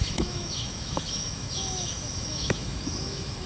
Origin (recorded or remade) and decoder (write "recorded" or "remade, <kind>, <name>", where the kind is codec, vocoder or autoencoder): remade, autoencoder, DAC-VAE